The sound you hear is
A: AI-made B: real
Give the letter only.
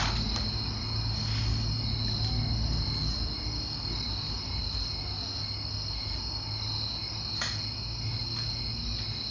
B